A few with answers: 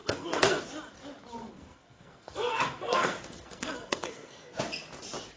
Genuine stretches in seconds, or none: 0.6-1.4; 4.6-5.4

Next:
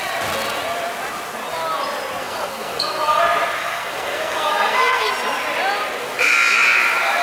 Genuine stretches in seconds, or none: 0.0-2.2; 3.2-3.6; 5.1-7.2

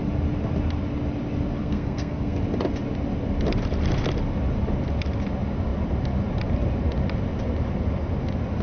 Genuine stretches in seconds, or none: 0.0-1.6; 2.4-8.6

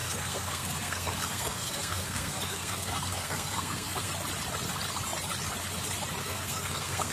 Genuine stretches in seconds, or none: 4.1-6.2